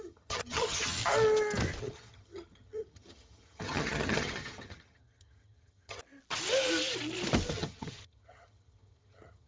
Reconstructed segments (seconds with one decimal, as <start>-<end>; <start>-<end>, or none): 0.0-1.0; 1.8-6.0; 7.5-9.5